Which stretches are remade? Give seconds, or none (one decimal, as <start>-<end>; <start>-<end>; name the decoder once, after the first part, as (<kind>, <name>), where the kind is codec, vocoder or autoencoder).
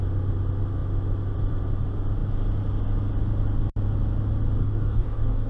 4.6-5.5 (codec, DAC)